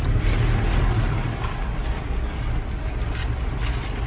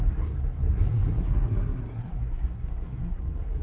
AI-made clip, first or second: second